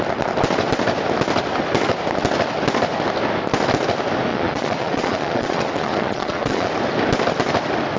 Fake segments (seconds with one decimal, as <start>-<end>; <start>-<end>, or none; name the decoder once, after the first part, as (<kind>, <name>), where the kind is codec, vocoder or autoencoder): 4.3-6.7 (vocoder, Vocos)